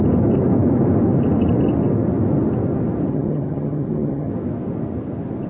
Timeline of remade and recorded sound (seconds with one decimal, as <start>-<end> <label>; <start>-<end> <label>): 0.0-3.1 recorded; 3.1-4.3 remade; 4.3-5.5 recorded